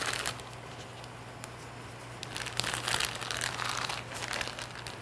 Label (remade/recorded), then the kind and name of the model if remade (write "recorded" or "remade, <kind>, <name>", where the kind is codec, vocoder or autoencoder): recorded